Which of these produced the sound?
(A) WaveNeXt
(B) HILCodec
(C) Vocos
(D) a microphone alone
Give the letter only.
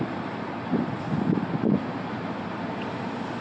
D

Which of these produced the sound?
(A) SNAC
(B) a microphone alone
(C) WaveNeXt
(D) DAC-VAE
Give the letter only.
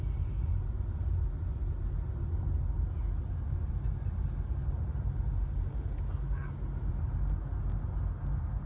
B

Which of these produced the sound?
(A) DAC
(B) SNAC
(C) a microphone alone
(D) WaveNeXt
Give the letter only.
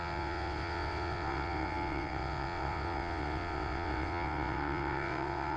D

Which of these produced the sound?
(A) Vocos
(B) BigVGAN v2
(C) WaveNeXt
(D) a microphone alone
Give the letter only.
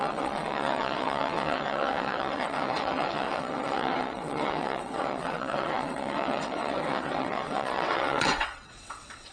C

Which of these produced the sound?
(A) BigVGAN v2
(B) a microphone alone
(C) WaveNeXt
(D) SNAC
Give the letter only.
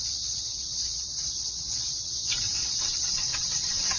C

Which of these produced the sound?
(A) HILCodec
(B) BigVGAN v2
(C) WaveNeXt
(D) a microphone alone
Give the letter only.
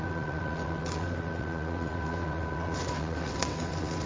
C